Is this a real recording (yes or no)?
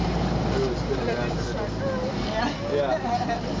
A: yes